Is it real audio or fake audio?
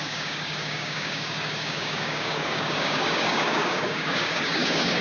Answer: fake